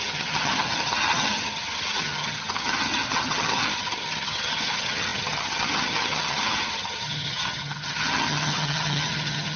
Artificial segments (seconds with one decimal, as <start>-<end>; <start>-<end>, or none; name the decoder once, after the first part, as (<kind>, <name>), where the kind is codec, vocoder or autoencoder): 0.0-9.6 (vocoder, HiFi-GAN)